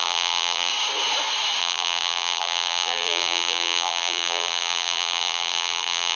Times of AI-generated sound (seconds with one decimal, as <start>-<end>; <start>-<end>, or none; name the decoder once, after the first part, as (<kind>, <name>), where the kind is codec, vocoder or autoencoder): 0.0-0.7 (vocoder, BigVGAN v2); 1.6-6.1